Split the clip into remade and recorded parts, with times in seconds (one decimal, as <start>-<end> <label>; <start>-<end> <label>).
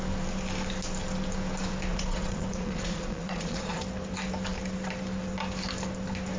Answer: 0.0-1.9 recorded; 1.9-3.8 remade; 3.8-6.4 recorded